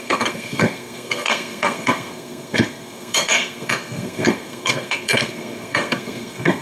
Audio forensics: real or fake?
fake